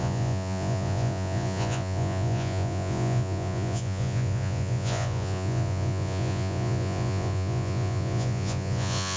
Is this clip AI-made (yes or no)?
yes